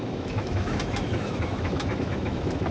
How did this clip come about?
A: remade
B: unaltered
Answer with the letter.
A